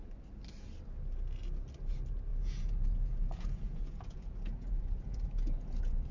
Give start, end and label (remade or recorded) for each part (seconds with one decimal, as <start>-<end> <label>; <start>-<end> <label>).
0.0-2.3 recorded; 2.3-6.1 remade